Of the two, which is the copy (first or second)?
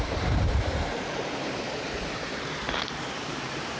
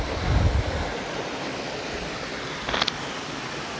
first